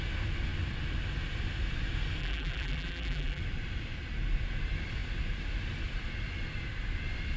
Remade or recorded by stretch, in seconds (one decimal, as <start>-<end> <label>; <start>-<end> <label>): 0.0-2.2 recorded; 2.2-3.4 remade; 3.4-7.4 recorded